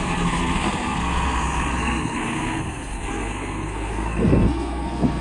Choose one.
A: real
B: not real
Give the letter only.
B